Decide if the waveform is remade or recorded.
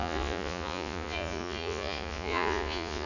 remade